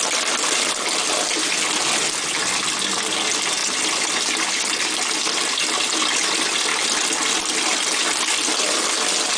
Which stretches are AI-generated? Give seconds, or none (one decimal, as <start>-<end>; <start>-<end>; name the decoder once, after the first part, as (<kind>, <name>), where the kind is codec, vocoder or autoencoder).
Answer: none

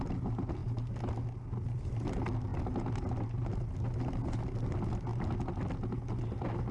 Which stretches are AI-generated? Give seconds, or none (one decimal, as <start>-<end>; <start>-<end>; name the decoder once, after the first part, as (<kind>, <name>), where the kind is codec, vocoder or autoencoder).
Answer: none

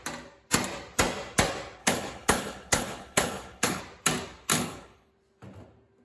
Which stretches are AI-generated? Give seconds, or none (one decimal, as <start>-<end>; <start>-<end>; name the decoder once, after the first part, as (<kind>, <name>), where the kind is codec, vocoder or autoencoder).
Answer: 1.8-3.8 (codec, HILCodec); 4.5-5.1

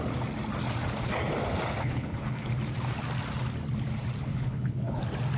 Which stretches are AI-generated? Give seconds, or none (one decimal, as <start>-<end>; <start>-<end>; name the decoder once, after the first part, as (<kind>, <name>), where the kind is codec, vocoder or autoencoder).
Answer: 1.8-2.5 (codec, HILCodec); 4.3-5.0

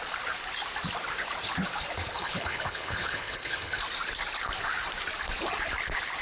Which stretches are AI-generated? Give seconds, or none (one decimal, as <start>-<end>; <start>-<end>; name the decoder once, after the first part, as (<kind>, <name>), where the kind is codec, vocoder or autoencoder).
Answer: 2.1-3.8 (codec, HILCodec)